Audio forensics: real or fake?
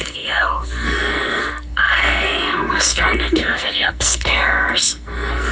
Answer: fake